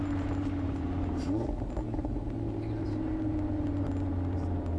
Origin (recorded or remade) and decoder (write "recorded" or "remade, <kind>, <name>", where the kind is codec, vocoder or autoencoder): remade, vocoder, BigVGAN v2